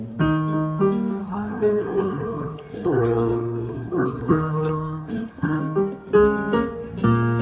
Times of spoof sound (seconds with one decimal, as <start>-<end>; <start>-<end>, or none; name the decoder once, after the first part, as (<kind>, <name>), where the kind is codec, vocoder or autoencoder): 1.2-5.6 (codec, SNAC)